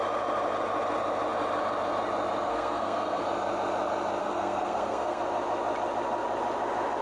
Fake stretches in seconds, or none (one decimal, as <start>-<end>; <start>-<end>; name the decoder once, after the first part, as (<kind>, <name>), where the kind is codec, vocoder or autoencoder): 2.5-3.2 (codec, SNAC); 4.2-5.2